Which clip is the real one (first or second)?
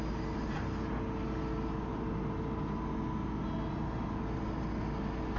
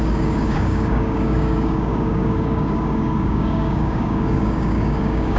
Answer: first